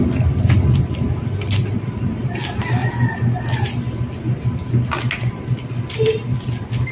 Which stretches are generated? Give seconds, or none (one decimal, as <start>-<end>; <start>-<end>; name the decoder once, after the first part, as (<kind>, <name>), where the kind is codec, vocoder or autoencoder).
0.0-2.8 (vocoder, BigVGAN v2)